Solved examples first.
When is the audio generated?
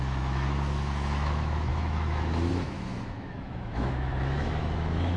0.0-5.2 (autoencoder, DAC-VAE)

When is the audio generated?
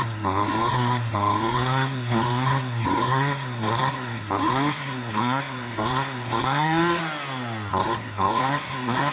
0.0-7.0 (codec, SNAC); 7.7-9.1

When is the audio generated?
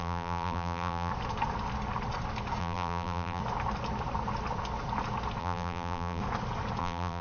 0.0-1.1 (vocoder, BigVGAN v2); 2.6-3.4; 5.4-6.2; 6.8-7.2